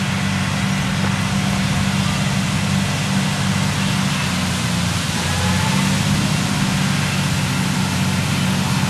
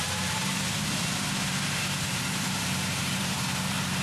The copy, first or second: second